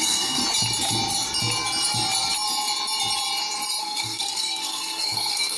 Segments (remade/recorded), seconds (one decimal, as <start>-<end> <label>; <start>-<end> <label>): 0.0-0.4 remade; 0.4-3.8 recorded; 3.8-5.6 remade